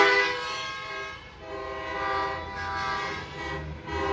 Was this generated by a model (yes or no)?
no